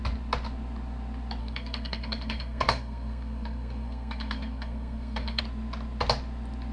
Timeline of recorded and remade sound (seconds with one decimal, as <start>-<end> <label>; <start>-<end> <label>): 0.0-1.4 recorded; 1.4-5.4 remade; 5.4-6.7 recorded